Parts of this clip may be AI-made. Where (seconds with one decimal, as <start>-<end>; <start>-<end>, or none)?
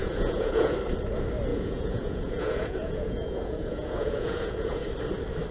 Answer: 0.0-0.7; 1.5-4.8